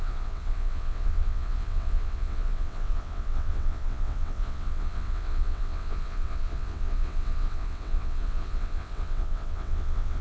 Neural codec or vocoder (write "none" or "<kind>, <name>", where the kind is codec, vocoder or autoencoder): vocoder, WaveNeXt